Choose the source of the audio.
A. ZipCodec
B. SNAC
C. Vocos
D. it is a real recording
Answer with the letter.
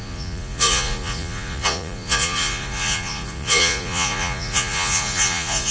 C